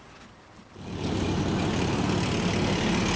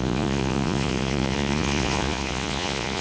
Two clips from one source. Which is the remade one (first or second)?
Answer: second